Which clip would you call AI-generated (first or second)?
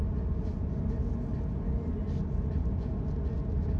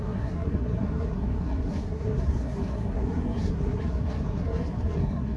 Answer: second